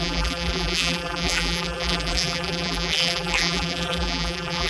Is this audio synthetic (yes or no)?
yes